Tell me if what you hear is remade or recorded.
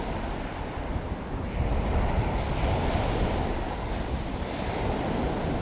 recorded